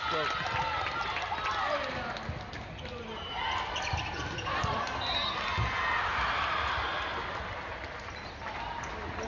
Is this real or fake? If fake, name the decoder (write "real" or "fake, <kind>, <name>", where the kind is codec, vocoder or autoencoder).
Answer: real